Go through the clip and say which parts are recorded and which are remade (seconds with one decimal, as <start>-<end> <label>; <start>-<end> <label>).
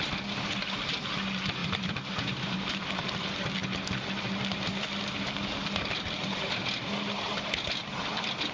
0.0-1.6 recorded; 1.6-2.8 remade; 2.8-8.5 recorded